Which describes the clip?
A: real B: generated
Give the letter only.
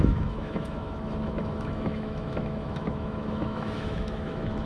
B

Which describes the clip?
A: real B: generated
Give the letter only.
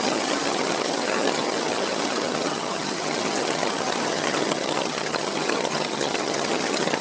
B